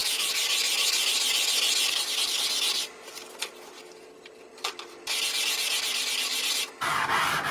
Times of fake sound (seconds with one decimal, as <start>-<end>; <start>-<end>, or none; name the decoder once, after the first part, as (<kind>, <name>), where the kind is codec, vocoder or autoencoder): none